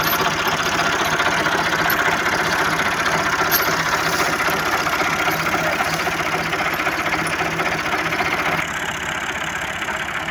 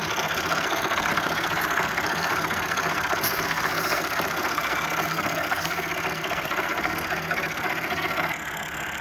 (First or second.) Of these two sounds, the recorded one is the first